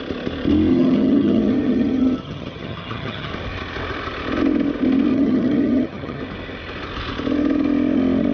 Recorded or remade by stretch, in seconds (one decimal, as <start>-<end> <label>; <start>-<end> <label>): 0.0-0.7 recorded; 0.7-3.3 remade; 3.3-5.1 recorded; 5.1-6.2 remade; 6.2-8.3 recorded